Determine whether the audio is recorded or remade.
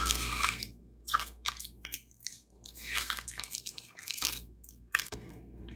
remade